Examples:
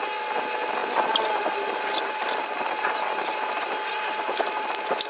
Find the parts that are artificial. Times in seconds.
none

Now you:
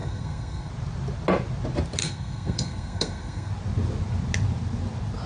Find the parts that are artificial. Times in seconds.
0.0-0.7 (codec, SNAC); 2.0-3.5

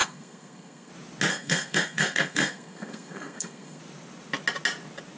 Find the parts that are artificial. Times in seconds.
0.0-0.9 (codec, SNAC); 1.3-3.8

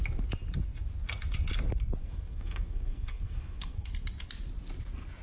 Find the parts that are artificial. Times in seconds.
2.0-3.9 (codec, SNAC)

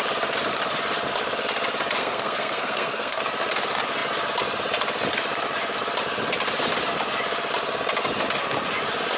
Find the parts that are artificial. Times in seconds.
2.0-3.2 (codec, SNAC)

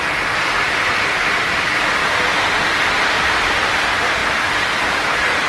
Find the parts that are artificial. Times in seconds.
none

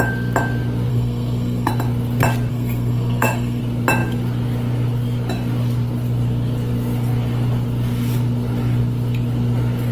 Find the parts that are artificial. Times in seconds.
0.9-1.7 (codec, SNAC); 2.5-3.6